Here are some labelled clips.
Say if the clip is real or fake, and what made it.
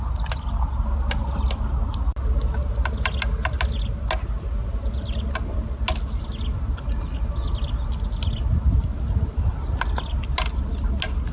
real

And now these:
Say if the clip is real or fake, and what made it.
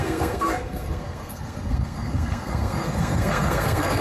fake, codec, SNAC